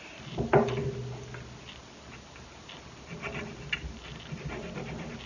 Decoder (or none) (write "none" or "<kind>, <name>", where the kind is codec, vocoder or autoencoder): none